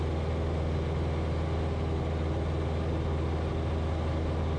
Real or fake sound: real